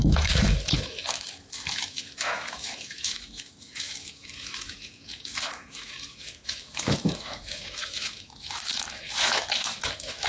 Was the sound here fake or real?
fake